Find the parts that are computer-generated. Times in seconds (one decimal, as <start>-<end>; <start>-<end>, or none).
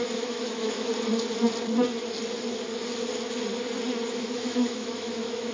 0.0-0.9; 4.1-5.5